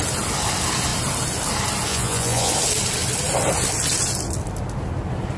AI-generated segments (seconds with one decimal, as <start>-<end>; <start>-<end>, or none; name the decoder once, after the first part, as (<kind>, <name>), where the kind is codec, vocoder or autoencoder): 1.9-2.5 (vocoder, Vocos)